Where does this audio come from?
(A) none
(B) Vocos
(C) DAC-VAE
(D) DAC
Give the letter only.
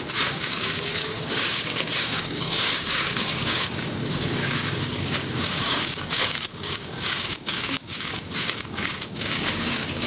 D